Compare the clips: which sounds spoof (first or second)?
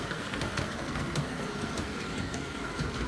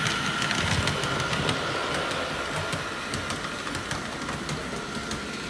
first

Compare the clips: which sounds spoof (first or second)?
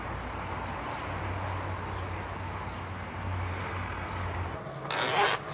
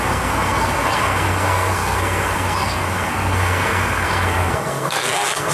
second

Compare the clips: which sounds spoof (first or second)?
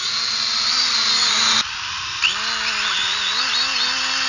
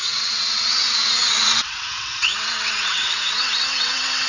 second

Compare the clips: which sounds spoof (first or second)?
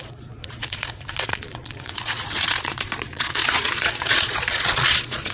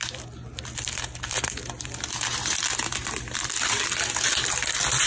first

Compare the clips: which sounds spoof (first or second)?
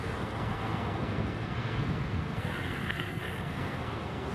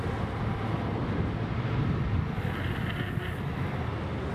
first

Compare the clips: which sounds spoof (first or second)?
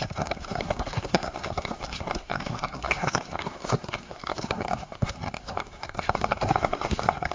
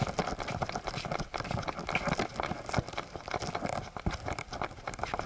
first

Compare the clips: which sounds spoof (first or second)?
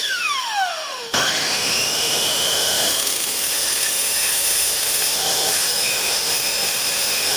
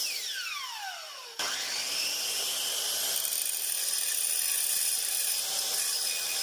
first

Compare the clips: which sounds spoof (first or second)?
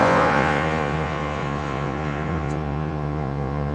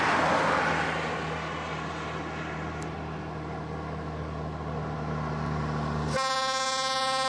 first